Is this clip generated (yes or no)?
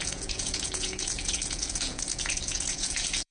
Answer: yes